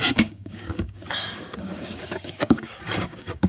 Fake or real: fake